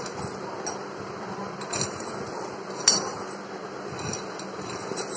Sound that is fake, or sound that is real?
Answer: real